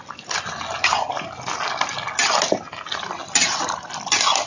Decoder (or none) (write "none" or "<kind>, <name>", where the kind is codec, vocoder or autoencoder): none